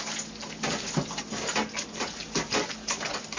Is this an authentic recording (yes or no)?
yes